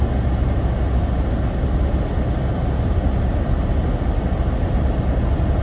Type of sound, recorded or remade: recorded